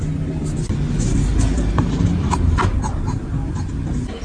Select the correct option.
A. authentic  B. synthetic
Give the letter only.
A